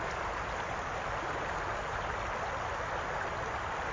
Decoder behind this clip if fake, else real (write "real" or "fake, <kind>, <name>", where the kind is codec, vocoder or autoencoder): real